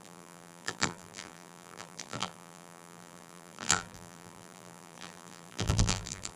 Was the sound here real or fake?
fake